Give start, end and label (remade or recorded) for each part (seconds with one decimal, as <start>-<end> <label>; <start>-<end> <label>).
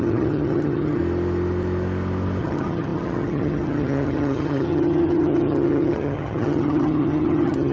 0.0-1.0 remade; 1.0-2.4 recorded; 2.4-7.7 remade